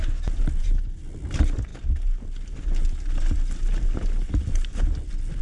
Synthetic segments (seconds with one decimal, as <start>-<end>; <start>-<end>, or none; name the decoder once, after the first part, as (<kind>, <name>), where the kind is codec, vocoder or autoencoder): none

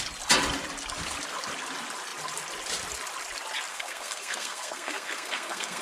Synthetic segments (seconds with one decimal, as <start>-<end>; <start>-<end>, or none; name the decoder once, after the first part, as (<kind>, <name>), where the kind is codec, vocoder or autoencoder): 3.7-5.8 (codec, SNAC)